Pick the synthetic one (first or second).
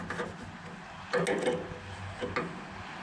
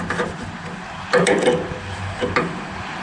second